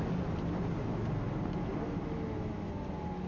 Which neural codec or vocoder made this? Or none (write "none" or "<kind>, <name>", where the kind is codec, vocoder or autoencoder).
none